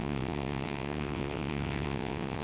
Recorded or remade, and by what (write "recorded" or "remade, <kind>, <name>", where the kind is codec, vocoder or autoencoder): remade, vocoder, WaveNeXt